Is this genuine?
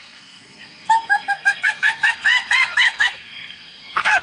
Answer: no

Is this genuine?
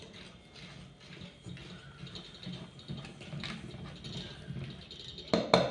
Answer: yes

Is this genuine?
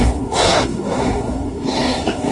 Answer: no